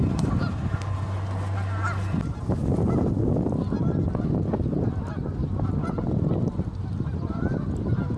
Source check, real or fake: real